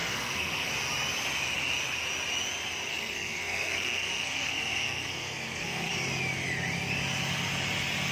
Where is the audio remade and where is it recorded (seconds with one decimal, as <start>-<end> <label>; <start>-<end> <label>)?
0.0-0.7 remade; 0.7-2.9 recorded; 2.9-5.9 remade; 5.9-8.1 recorded

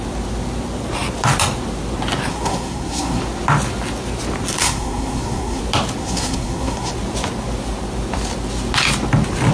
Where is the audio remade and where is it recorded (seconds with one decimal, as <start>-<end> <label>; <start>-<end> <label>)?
0.0-2.3 recorded; 2.3-3.2 remade; 3.2-4.6 recorded; 4.6-5.6 remade; 5.6-6.0 recorded; 6.0-6.9 remade; 6.9-9.5 recorded

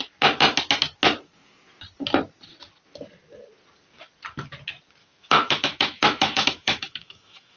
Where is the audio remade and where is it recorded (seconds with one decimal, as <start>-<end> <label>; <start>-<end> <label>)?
0.0-5.0 recorded; 5.0-7.6 remade